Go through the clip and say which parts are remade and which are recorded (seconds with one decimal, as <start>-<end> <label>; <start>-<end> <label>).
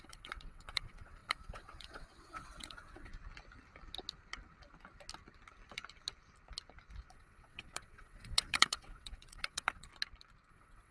0.0-3.1 remade; 3.1-7.1 recorded; 7.1-9.9 remade; 9.9-10.5 recorded; 10.5-10.9 remade